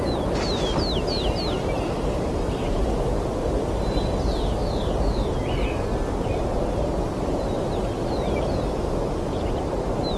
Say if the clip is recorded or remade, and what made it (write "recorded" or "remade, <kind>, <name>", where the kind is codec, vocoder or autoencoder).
recorded